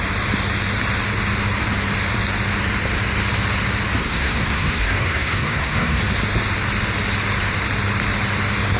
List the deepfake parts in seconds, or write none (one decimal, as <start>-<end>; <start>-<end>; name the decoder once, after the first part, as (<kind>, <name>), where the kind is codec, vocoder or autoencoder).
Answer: 4.0-6.0 (codec, SNAC)